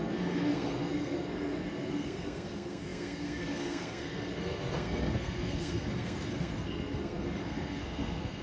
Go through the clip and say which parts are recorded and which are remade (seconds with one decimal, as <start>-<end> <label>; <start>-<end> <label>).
0.0-8.4 remade